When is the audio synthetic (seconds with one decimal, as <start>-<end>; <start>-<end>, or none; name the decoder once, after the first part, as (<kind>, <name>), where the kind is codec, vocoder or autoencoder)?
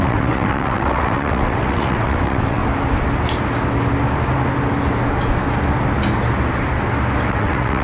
0.0-2.6 (vocoder, WaveNeXt); 7.3-7.8